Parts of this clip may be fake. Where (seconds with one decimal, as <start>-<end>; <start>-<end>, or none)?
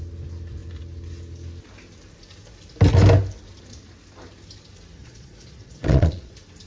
5.0-6.3